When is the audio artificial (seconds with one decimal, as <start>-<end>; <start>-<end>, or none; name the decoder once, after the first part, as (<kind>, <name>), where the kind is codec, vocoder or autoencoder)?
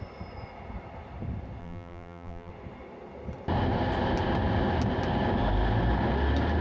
1.6-2.5 (vocoder, BigVGAN v2)